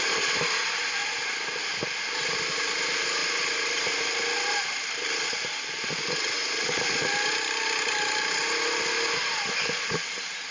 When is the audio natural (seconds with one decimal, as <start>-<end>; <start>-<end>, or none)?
0.0-10.5